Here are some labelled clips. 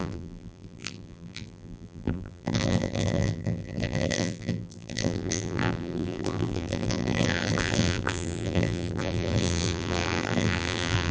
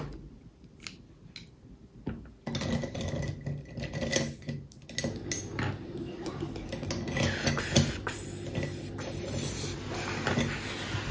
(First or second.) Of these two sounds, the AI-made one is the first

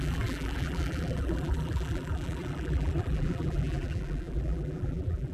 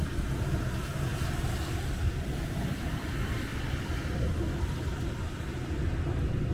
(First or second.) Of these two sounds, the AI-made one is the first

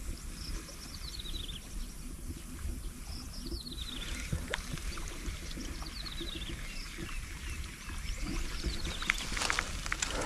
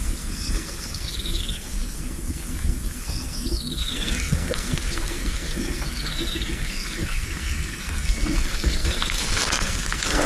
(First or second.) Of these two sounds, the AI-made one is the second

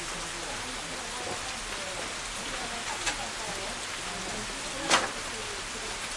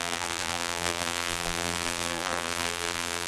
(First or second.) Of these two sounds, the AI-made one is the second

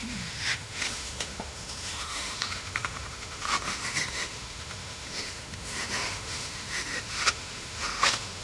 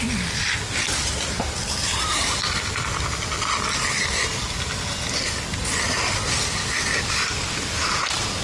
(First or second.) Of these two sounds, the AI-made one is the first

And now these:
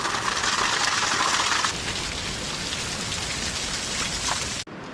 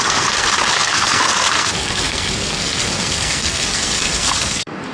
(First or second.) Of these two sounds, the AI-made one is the second